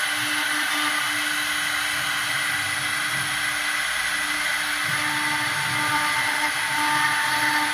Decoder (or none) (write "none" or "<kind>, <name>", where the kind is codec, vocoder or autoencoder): none